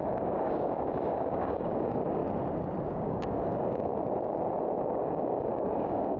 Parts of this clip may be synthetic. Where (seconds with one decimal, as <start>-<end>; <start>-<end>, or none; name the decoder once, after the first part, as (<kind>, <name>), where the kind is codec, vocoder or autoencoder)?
0.0-2.2 (codec, DAC); 2.9-3.9; 4.8-6.2